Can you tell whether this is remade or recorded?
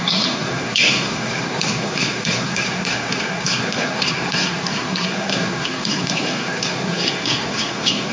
remade